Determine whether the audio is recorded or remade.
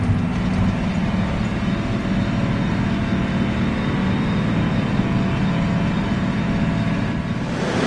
recorded